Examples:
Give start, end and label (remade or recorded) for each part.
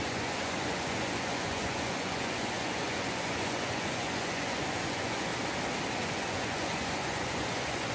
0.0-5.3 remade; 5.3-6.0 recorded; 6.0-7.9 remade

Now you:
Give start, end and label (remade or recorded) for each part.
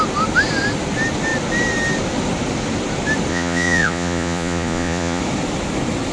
0.0-3.3 recorded; 3.3-5.2 remade; 5.2-6.1 recorded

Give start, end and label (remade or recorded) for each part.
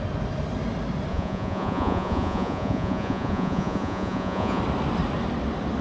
0.0-1.1 recorded; 1.1-4.6 remade; 4.6-5.8 recorded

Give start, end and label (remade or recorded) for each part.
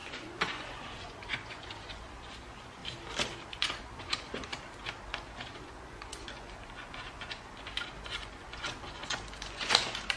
0.0-2.8 remade; 2.8-3.5 recorded; 3.5-4.5 remade; 4.5-5.1 recorded; 5.1-10.2 remade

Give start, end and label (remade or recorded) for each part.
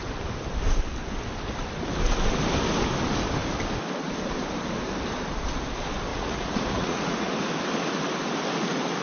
0.0-6.1 recorded; 6.1-7.3 remade; 7.3-9.0 recorded